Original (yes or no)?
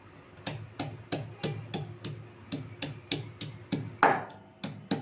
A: yes